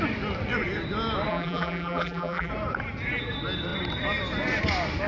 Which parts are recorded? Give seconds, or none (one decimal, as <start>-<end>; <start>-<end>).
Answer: 0.0-1.3; 2.5-5.1